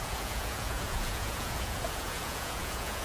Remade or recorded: remade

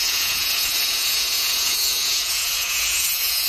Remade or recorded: remade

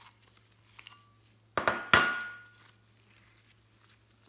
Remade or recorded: recorded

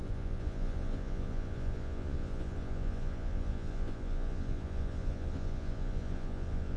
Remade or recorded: remade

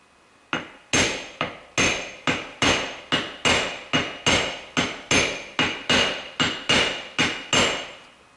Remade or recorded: recorded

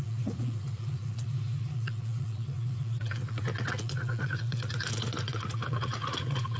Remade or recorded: remade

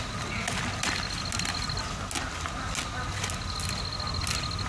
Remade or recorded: recorded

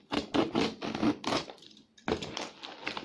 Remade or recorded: recorded